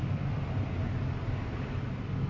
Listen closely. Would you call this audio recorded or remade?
recorded